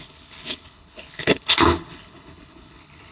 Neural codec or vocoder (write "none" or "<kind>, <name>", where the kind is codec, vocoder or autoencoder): codec, HILCodec